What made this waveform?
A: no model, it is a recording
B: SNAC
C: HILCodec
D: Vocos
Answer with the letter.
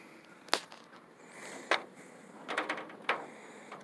A